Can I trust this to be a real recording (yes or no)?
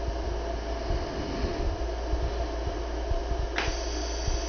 yes